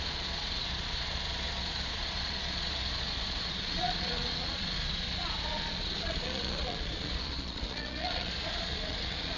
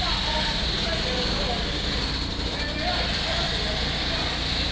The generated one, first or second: first